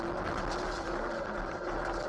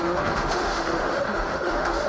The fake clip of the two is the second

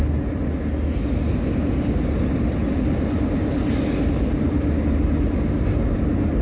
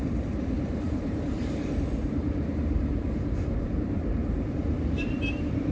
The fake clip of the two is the second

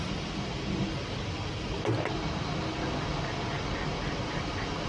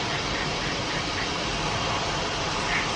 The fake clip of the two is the second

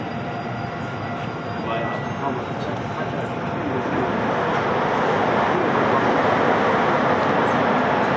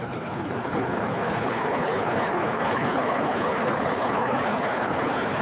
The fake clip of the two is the second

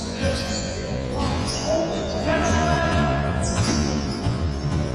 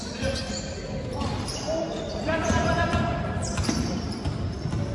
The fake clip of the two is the first